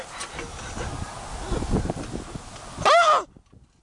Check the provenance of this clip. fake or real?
real